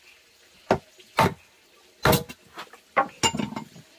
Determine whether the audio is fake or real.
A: real